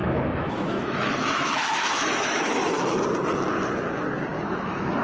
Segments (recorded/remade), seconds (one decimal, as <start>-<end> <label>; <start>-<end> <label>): 0.0-3.0 remade; 3.0-4.3 recorded; 4.3-5.0 remade